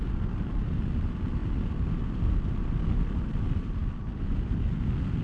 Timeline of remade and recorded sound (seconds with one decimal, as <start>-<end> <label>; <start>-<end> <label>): 0.0-5.2 recorded